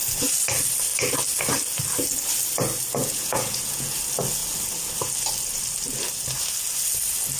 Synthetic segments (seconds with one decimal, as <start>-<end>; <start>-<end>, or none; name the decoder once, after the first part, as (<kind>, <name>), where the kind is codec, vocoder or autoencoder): 3.0-4.0 (vocoder, Vocos)